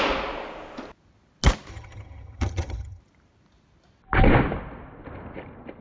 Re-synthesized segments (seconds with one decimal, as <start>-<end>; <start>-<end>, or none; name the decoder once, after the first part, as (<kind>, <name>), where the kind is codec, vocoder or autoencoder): 1.7-3.0 (vocoder, HiFi-GAN)